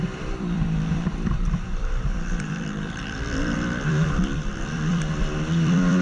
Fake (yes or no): yes